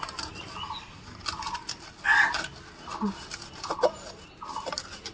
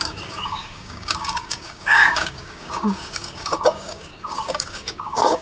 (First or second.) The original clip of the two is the first